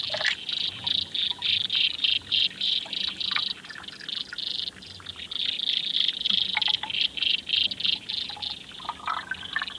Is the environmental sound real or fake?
real